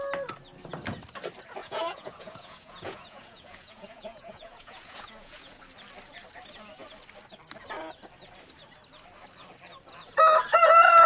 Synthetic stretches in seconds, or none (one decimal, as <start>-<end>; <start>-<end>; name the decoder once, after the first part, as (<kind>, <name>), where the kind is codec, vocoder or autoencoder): 1.6-5.6 (vocoder, Vocos)

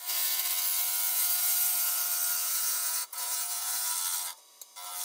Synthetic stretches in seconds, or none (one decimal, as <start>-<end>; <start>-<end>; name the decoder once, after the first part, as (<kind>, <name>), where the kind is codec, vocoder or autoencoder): 1.1-2.0 (vocoder, Vocos); 2.4-3.9

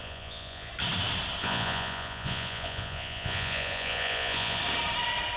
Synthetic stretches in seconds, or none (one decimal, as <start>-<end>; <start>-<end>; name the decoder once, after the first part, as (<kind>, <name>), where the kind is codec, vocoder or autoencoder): 0.0-0.7 (vocoder, Vocos); 1.4-4.6

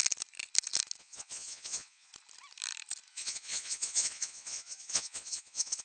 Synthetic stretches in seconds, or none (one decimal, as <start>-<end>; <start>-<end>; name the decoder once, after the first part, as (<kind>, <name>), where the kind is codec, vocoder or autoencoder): 1.0-2.1 (vocoder, Vocos); 3.1-5.8

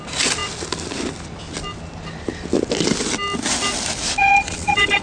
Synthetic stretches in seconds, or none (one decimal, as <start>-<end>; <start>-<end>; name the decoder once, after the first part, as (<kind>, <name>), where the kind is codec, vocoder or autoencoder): 4.2-5.0 (vocoder, Vocos)

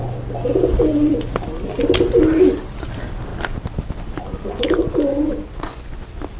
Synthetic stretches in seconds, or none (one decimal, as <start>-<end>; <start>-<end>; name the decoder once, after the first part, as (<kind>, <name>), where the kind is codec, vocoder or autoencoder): 5.1-5.9 (vocoder, Vocos)

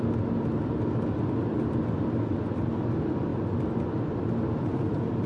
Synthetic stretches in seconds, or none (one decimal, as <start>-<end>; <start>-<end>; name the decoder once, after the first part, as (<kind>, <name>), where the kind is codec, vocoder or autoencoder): none

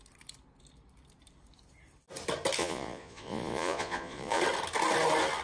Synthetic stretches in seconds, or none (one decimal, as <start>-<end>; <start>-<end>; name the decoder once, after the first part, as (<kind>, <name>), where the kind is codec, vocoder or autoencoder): 2.6-4.4 (vocoder, Vocos)